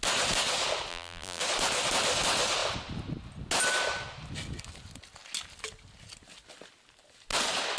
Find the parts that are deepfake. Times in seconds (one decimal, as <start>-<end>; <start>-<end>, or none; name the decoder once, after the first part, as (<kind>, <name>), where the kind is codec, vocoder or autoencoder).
0.9-1.4 (vocoder, BigVGAN v2)